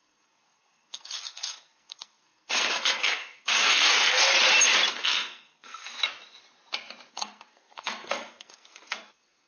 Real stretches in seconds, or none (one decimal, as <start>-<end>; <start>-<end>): 4.3-4.9; 6.0-7.1